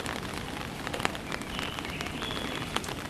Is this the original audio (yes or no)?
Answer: no